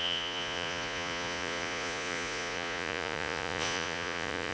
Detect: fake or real fake